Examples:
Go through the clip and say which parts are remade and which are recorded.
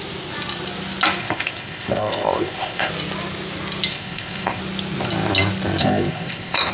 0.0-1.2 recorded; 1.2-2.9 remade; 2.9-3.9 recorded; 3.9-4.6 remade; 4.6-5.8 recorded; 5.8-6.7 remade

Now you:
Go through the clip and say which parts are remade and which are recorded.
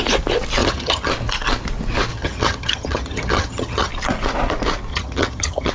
0.0-0.6 recorded; 0.6-1.1 remade; 1.1-2.1 recorded; 2.1-3.9 remade; 3.9-4.9 recorded; 4.9-5.7 remade